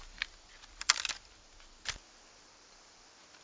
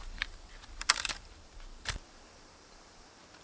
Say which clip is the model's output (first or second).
second